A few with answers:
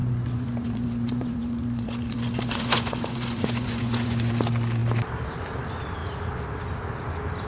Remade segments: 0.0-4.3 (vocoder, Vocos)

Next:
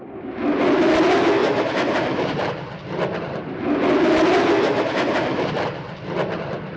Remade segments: none